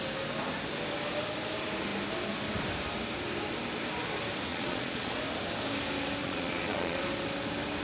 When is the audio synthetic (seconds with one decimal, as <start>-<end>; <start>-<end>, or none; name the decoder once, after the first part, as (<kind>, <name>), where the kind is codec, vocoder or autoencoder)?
4.5-5.2 (vocoder, Vocos); 6.2-7.0